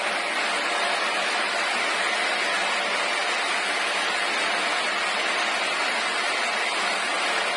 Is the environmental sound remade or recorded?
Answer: recorded